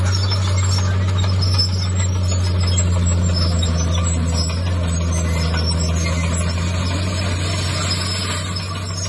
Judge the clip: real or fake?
real